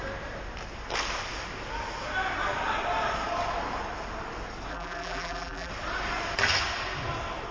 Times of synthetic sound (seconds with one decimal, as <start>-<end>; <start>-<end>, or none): 4.7-5.7

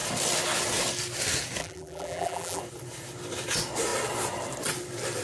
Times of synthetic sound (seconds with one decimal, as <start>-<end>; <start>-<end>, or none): 1.6-2.6

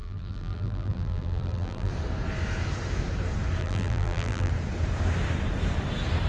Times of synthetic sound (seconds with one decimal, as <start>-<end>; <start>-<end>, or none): 0.0-1.9; 3.6-4.5

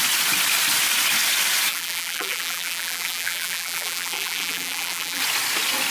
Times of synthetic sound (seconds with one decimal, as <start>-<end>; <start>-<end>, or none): 1.7-5.2